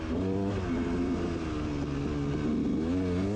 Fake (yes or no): no